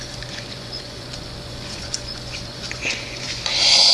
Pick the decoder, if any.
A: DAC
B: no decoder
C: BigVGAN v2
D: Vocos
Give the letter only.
D